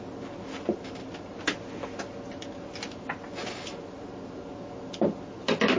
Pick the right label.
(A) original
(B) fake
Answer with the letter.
A